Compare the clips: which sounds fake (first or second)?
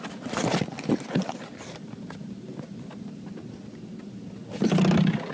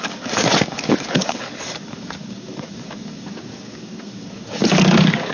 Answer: second